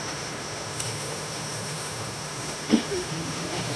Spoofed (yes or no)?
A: yes